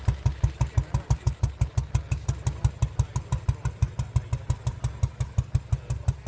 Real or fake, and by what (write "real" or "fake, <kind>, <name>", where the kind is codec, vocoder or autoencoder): real